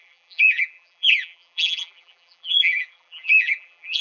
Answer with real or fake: fake